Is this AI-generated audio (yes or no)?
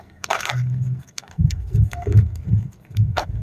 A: yes